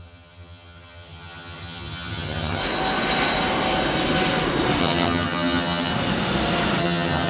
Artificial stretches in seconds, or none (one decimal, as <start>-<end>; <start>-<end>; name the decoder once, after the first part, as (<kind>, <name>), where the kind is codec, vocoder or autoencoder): 0.0-2.6 (vocoder, HiFi-GAN); 4.8-5.9; 6.8-7.3